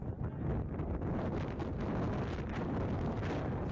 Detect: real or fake real